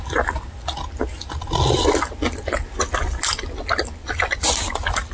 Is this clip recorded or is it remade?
recorded